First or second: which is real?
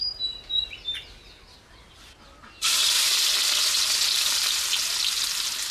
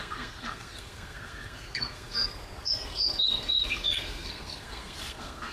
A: first